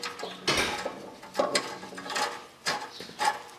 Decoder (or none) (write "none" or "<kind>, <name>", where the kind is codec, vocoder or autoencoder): none